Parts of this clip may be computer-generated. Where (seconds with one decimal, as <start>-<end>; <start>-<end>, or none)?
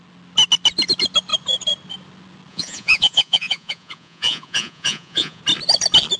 2.5-5.4